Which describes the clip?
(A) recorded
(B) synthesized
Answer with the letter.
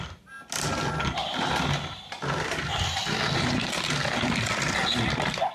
A